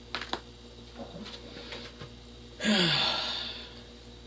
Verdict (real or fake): real